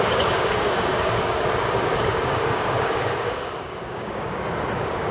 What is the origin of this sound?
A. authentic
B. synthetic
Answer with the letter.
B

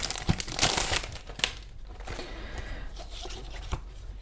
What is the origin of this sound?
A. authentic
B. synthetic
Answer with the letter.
A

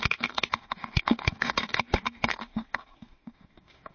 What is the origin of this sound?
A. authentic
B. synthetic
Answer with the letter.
B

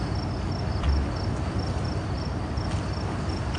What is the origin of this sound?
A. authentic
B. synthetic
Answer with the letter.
A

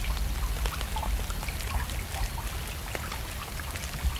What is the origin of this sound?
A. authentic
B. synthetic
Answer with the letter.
A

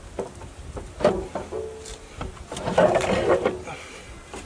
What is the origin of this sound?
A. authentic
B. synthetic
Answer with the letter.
A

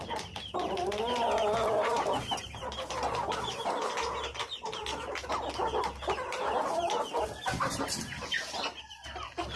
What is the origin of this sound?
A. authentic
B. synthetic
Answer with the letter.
A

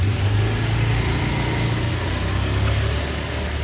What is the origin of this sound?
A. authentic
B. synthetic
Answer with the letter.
A